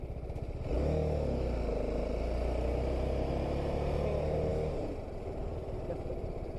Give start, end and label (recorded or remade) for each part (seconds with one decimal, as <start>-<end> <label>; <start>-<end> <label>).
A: 0.0-6.6 recorded